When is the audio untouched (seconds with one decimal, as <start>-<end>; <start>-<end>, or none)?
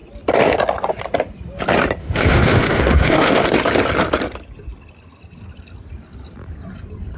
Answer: 0.0-2.0; 3.4-7.2